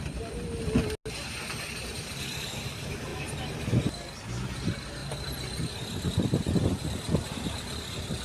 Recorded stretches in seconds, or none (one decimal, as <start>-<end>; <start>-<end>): 0.0-8.2